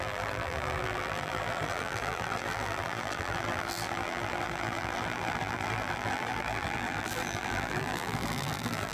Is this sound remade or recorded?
remade